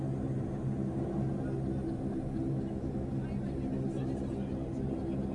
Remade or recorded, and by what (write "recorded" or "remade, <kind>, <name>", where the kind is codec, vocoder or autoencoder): recorded